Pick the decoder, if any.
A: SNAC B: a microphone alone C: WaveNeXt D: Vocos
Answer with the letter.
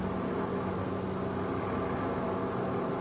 B